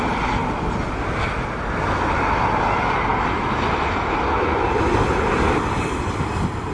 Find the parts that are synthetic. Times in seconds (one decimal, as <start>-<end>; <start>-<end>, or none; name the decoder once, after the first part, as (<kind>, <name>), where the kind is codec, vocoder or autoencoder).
none